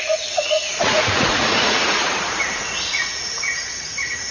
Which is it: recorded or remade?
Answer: remade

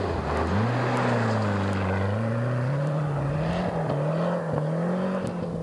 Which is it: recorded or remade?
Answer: recorded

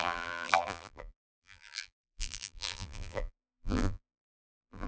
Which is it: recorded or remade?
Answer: remade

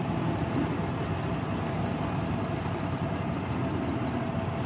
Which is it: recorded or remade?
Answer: recorded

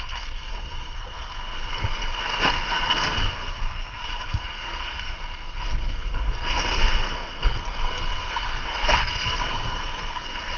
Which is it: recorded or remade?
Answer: remade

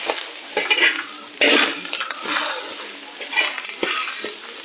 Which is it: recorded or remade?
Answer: recorded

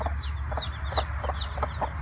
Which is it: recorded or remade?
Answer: recorded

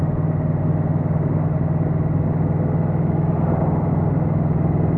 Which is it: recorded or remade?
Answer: recorded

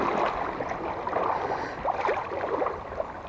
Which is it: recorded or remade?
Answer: recorded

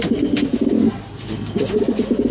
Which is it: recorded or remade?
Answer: recorded